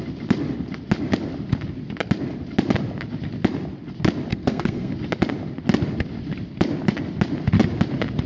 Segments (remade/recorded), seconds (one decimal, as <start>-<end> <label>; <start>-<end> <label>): 0.0-4.3 recorded; 4.3-4.9 remade; 4.9-8.3 recorded